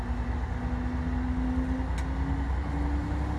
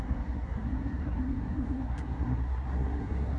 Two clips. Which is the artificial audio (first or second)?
second